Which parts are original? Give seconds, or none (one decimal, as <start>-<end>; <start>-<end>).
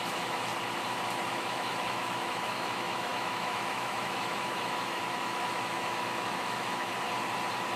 0.5-1.3; 6.9-7.8